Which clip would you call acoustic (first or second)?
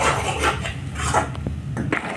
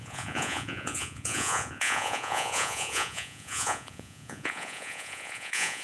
first